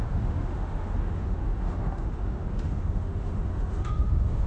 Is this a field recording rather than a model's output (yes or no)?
no